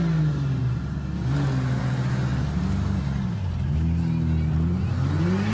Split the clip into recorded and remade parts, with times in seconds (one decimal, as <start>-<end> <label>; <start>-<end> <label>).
0.0-5.5 recorded